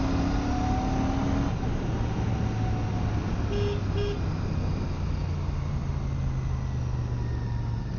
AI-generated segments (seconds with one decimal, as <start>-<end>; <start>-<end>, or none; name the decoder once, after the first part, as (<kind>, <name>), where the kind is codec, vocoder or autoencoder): none